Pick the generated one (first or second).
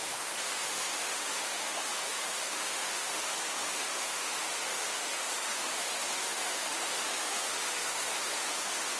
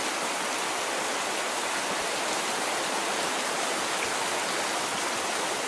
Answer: first